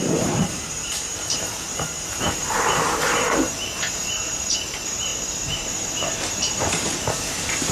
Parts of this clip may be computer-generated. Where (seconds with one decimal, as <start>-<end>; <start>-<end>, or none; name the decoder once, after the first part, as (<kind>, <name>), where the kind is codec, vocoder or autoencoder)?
0.0-7.7 (vocoder, BigVGAN v2)